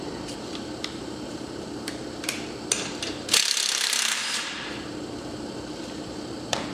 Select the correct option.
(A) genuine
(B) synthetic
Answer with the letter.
B